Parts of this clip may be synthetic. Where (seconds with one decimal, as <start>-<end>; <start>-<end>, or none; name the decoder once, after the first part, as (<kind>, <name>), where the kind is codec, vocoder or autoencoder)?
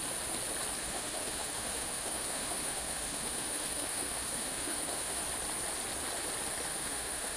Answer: 0.8-5.2 (autoencoder, DAC-VAE); 6.7-7.4